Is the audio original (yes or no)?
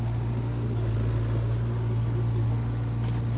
yes